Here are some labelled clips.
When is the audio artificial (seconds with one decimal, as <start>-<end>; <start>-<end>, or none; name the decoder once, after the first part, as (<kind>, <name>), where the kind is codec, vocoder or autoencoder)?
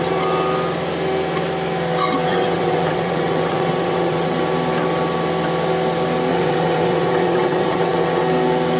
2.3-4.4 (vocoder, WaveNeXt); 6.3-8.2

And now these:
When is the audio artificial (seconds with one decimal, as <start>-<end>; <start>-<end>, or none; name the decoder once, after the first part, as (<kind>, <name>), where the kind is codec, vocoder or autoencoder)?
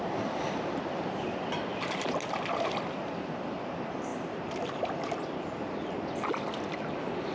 4.1-5.9 (vocoder, BigVGAN v2)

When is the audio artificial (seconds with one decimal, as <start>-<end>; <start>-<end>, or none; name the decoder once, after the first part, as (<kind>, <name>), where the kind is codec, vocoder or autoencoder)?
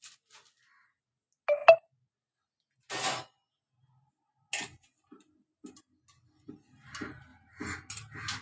none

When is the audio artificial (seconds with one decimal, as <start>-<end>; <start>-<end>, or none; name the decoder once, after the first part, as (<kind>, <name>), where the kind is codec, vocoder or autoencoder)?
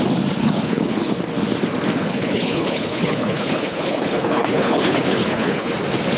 0.4-1.1 (codec, HILCodec); 2.0-5.7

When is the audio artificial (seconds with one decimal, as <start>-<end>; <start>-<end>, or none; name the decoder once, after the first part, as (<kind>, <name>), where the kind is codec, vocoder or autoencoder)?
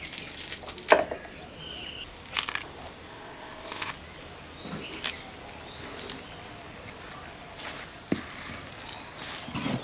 3.1-3.9 (codec, ZipCodec)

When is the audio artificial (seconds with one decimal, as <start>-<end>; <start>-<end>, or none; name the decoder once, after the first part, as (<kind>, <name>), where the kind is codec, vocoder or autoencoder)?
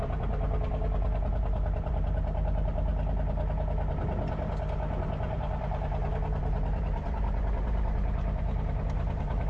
0.0-2.9 (vocoder, BigVGAN v2); 5.0-9.5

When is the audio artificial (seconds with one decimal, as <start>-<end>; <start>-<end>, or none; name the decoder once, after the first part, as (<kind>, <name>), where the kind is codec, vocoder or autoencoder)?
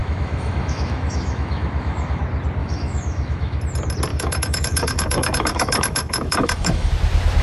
0.0-2.2 (autoencoder, DAC-VAE); 2.6-3.6; 4.1-6.9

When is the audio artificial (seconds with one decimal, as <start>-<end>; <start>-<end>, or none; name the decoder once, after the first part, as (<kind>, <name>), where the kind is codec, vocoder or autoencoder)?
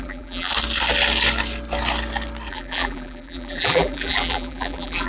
0.0-0.5 (vocoder, BigVGAN v2); 2.5-5.1